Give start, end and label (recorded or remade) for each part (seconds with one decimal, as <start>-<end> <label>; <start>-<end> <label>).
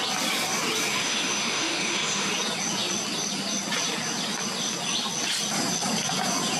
0.0-0.9 recorded; 0.9-2.3 remade; 2.3-6.6 recorded